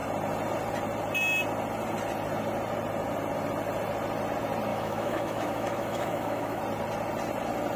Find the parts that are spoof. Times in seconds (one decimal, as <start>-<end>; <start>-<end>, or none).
4.7-6.6